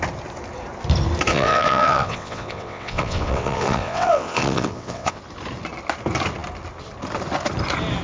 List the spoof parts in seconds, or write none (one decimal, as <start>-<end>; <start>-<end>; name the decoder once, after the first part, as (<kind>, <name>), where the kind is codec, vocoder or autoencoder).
1.3-5.2 (vocoder, WaveNeXt)